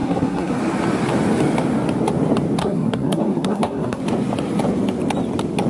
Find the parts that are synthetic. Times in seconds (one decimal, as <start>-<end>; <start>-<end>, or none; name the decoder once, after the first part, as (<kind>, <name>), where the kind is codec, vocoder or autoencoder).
0.0-0.6 (codec, SNAC); 2.6-4.0